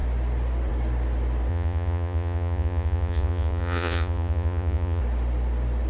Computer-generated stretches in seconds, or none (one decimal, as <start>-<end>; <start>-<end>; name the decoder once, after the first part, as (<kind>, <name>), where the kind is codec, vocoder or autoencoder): 1.5-5.0 (vocoder, Vocos)